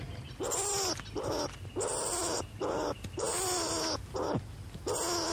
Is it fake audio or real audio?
real